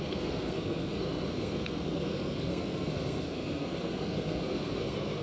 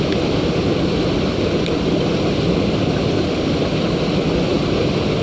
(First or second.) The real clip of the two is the second